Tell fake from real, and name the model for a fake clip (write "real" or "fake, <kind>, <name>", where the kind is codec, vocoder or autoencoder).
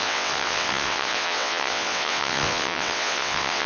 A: fake, vocoder, WaveNeXt